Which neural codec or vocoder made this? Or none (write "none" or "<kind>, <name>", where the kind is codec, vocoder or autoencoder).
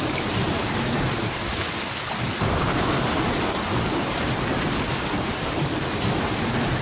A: none